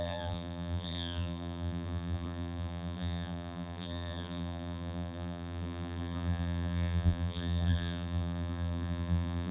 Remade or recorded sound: remade